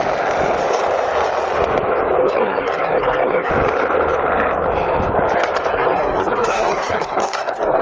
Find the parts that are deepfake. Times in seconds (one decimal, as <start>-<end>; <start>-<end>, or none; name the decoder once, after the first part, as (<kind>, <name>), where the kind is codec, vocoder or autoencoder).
2.2-3.5 (codec, SNAC); 5.7-7.8